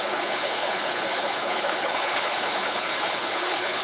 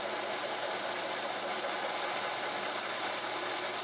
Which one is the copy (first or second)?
first